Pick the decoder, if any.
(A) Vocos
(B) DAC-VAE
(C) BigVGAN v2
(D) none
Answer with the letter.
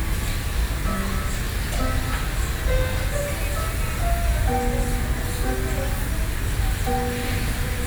D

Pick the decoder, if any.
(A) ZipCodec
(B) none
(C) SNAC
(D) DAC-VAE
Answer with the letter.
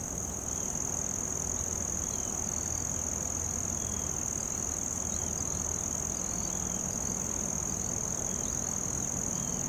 B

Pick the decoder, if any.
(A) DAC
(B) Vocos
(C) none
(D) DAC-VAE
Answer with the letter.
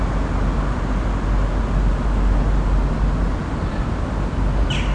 C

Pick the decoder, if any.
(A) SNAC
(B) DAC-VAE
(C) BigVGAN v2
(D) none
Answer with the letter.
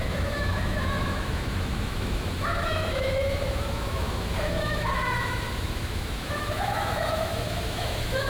B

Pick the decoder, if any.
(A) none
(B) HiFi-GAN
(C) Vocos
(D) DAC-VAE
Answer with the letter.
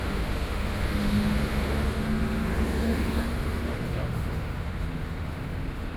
D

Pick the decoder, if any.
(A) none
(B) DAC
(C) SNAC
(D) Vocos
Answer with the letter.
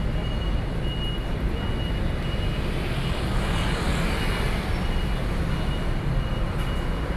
A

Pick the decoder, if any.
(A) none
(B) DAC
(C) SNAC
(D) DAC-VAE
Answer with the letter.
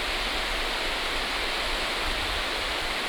A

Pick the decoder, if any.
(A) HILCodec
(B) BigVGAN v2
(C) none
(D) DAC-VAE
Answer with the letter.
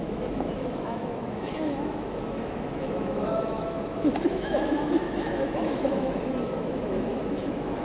D